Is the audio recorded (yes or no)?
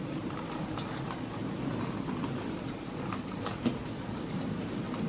yes